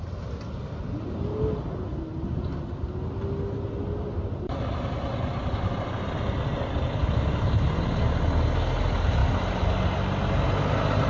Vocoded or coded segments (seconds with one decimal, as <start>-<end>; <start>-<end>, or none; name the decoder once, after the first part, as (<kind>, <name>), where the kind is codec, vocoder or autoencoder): none